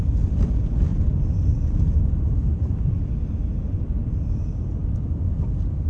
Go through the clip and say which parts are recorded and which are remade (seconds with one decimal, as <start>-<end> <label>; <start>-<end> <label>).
0.0-5.9 recorded